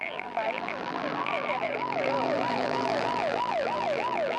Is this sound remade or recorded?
remade